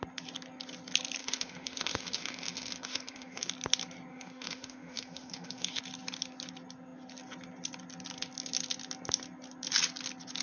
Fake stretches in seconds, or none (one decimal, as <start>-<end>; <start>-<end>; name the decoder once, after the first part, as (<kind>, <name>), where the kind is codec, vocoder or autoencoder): 1.2-3.5 (autoencoder, DAC-VAE); 4.1-5.8